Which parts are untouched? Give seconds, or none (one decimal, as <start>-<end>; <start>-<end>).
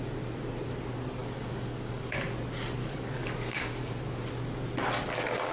0.0-1.2; 2.3-2.8; 3.9-5.5